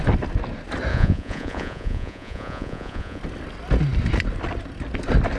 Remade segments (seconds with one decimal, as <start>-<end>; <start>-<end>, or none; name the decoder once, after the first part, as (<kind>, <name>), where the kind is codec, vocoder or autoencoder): 0.9-3.2 (vocoder, Vocos)